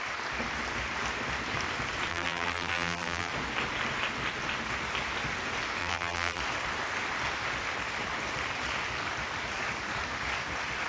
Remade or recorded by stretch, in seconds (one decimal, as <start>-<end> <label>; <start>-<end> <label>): 0.0-2.1 recorded; 2.1-3.3 remade; 3.3-5.8 recorded; 5.8-6.4 remade; 6.4-10.9 recorded